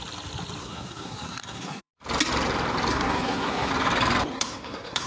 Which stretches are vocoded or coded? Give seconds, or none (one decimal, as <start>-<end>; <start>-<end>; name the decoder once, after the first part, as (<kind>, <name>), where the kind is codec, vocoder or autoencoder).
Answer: 0.6-1.9 (codec, SNAC); 2.9-3.7; 4.3-5.1